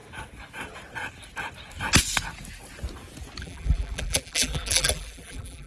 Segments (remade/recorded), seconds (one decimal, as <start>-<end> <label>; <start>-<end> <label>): 0.0-3.4 recorded; 3.4-5.7 remade